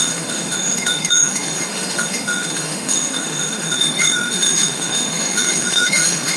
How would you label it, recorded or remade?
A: remade